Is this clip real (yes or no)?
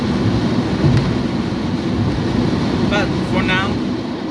yes